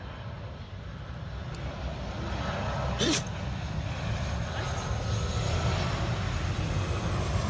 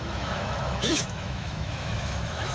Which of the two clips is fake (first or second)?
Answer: second